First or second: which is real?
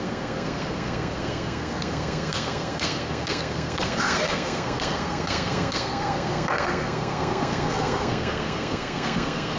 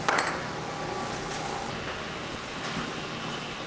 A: second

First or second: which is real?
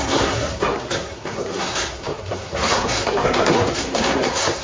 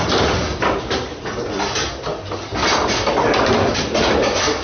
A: second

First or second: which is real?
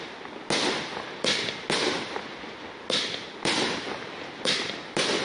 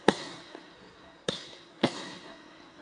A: first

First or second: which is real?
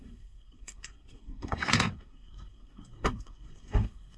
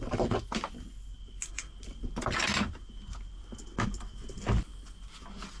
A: second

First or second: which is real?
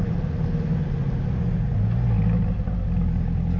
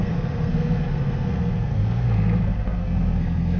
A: first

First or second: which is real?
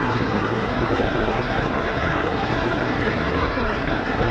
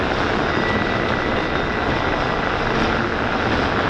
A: second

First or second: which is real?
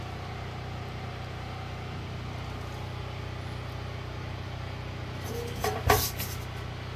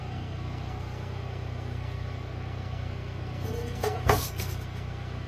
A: first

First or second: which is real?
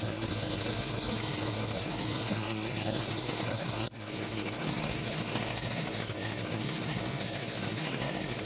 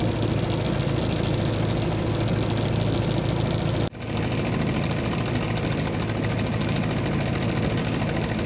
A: second